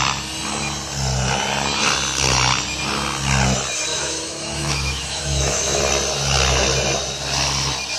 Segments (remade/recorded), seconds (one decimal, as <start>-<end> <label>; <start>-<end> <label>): 0.0-3.9 recorded; 3.9-5.8 remade; 5.8-8.0 recorded